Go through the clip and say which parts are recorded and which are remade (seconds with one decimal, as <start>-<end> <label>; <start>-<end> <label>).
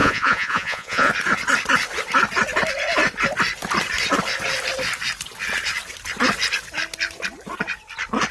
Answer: 0.0-1.1 remade; 1.1-8.3 recorded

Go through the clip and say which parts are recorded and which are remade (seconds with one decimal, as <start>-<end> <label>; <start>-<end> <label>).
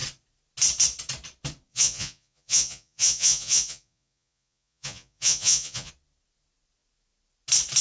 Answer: 0.0-1.7 recorded; 1.7-5.9 remade; 5.9-7.8 recorded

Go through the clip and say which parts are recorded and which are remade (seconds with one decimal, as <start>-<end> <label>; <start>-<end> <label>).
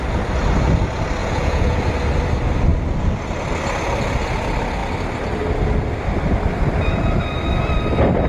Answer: 0.0-1.2 recorded; 1.2-1.8 remade; 1.8-8.3 recorded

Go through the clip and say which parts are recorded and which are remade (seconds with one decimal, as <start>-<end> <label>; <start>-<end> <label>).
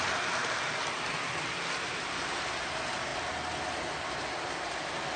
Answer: 0.0-5.2 recorded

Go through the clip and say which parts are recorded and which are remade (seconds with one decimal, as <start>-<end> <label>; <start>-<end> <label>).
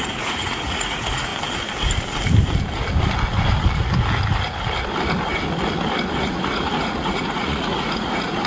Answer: 0.0-1.3 remade; 1.3-6.1 recorded; 6.1-8.5 remade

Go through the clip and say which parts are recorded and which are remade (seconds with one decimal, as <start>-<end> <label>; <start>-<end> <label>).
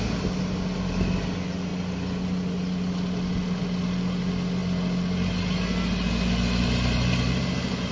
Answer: 0.0-7.9 recorded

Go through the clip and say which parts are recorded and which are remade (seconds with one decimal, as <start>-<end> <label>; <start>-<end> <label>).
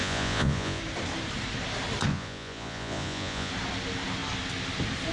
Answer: 0.0-0.8 remade; 0.8-2.1 recorded; 2.1-3.5 remade; 3.5-5.1 recorded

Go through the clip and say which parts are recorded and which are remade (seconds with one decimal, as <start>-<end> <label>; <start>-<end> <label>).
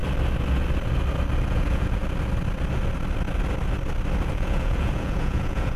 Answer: 0.0-1.5 recorded; 1.5-2.0 remade; 2.0-4.3 recorded; 4.3-5.8 remade